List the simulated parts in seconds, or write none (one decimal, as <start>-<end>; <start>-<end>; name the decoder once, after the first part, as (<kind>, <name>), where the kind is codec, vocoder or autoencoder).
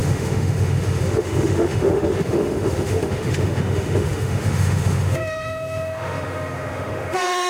0.0-7.5 (autoencoder, DAC-VAE)